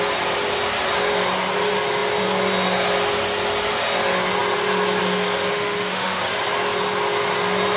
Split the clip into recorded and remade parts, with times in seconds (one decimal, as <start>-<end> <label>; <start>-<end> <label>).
0.0-5.5 recorded; 5.5-6.2 remade; 6.2-7.8 recorded